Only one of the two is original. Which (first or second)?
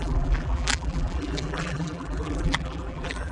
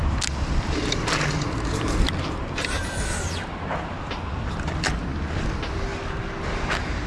second